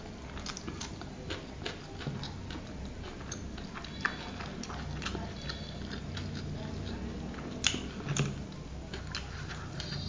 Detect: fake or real real